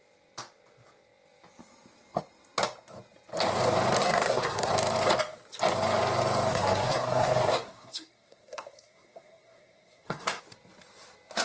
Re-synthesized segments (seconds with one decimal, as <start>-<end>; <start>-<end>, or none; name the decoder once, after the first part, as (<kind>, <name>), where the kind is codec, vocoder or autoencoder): 4.0-4.7 (codec, SNAC); 6.5-10.4